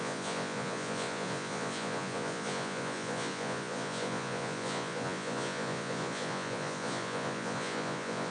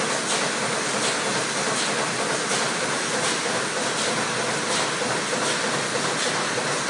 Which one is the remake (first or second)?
first